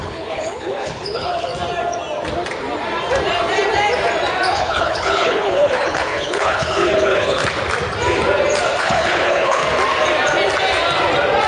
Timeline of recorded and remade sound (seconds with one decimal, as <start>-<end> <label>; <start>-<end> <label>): 0.0-1.5 remade; 1.5-4.5 recorded; 4.5-7.4 remade; 7.4-8.8 recorded; 8.8-9.6 remade; 9.6-11.5 recorded